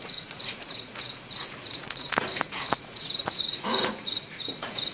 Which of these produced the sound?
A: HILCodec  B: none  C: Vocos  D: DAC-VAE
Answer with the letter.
C